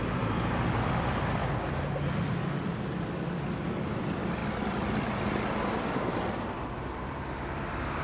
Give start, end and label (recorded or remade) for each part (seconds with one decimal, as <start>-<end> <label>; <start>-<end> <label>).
0.0-1.4 remade; 1.4-2.7 recorded; 2.7-4.4 remade; 4.4-6.3 recorded; 6.3-8.0 remade